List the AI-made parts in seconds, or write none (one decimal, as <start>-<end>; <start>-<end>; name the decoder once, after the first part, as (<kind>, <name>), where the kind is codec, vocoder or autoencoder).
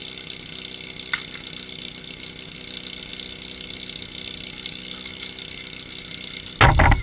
none